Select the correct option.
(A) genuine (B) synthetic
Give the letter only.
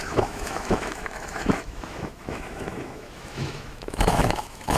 B